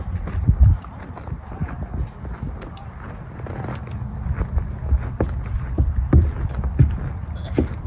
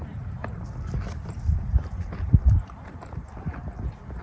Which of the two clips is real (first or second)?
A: first